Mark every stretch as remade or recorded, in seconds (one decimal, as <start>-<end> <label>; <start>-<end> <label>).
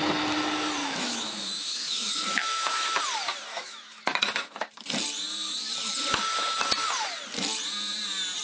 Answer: 0.0-0.8 recorded; 0.8-3.0 remade; 3.0-3.5 recorded; 3.5-5.0 remade; 5.0-8.4 recorded